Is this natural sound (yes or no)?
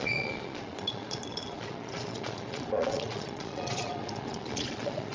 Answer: no